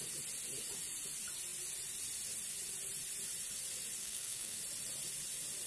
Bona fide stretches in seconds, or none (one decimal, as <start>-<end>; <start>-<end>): 0.0-4.0; 4.6-5.7